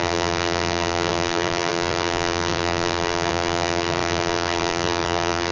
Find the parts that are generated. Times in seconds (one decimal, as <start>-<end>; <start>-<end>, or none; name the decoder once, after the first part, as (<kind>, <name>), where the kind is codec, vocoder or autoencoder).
0.0-5.5 (vocoder, BigVGAN v2)